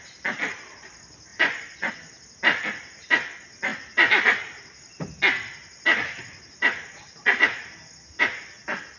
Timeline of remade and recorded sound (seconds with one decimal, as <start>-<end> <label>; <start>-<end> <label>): 0.0-1.3 recorded; 1.3-1.9 remade; 1.9-9.0 recorded